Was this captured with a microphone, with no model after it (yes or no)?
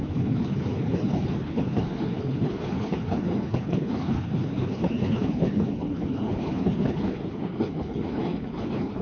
no